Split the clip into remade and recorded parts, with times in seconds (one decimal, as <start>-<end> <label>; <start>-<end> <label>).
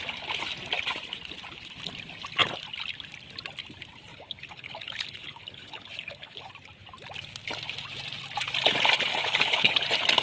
0.0-4.1 recorded; 4.1-6.5 remade; 6.5-9.1 recorded; 9.1-9.7 remade; 9.7-10.2 recorded